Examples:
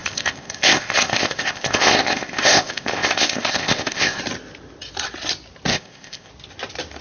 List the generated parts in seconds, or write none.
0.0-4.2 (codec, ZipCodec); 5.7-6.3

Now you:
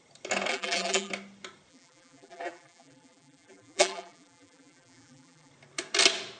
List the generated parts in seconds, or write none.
0.5-1.1 (vocoder, BigVGAN v2); 1.7-5.5

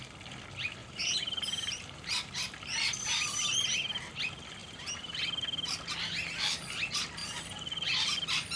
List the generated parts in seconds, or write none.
0.8-2.3 (vocoder, BigVGAN v2); 4.6-5.2

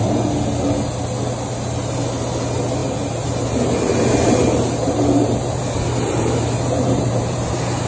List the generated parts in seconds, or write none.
2.8-7.5 (vocoder, BigVGAN v2)

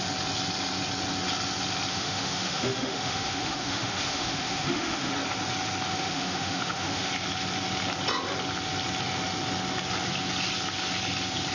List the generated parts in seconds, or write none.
1.9-5.1 (autoencoder, DAC-VAE); 5.9-7.1

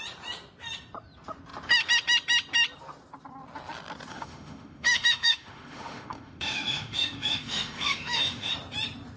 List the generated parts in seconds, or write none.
4.1-8.5 (autoencoder, DAC-VAE)

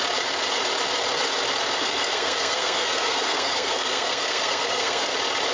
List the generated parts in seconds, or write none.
1.8-5.1 (codec, SNAC)